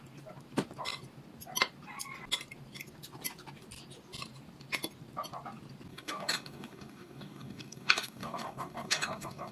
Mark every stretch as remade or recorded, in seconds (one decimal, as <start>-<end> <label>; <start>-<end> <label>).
0.0-5.9 recorded; 5.9-9.5 remade